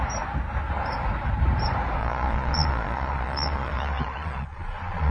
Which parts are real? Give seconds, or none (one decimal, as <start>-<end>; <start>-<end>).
0.0-2.0